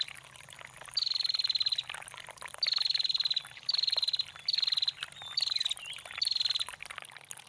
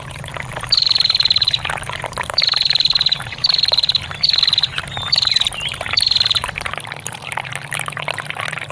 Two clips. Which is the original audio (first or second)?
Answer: first